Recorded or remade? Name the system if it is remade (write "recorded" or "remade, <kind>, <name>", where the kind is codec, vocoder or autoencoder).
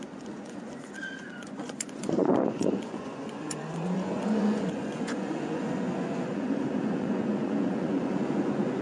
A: remade, vocoder, Vocos